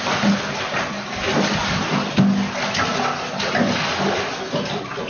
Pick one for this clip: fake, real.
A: real